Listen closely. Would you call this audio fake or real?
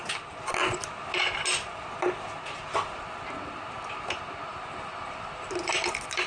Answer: real